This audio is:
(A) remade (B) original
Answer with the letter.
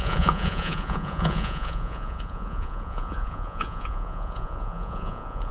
A